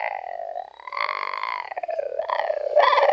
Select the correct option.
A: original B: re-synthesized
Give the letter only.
A